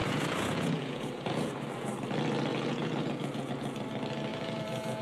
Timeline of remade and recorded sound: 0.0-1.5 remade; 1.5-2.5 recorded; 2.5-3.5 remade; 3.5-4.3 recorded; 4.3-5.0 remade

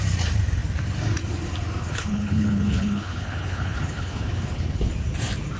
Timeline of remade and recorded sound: 0.0-1.8 recorded; 1.8-4.9 remade; 4.9-5.6 recorded

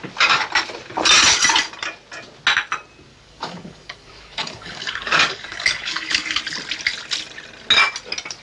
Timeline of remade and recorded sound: 0.0-3.1 recorded; 3.1-6.4 remade; 6.4-8.4 recorded

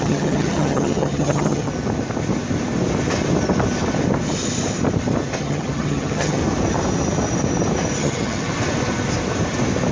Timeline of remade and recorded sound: 0.0-1.7 remade; 1.7-5.4 recorded; 5.4-6.4 remade; 6.4-8.0 recorded; 8.0-8.5 remade; 8.5-9.9 recorded

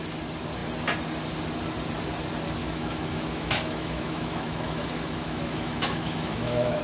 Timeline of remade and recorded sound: 0.0-2.6 recorded; 2.6-6.8 remade